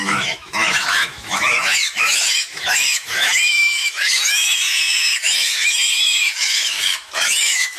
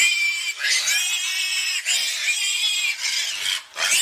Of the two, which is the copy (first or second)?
first